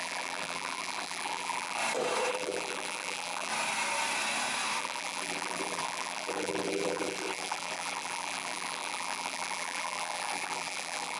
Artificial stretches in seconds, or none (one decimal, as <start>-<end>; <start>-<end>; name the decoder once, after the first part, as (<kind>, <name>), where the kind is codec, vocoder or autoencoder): 0.0-1.8 (vocoder, BigVGAN v2); 2.3-3.5; 4.8-11.2